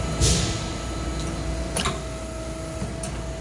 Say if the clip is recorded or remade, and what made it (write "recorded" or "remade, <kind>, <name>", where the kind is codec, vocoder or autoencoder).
recorded